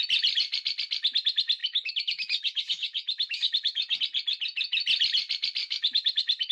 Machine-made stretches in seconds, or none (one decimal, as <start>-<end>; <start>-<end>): 1.6-4.0; 5.6-6.5